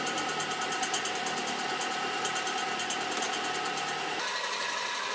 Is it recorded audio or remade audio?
recorded